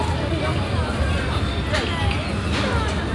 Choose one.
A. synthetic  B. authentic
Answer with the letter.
B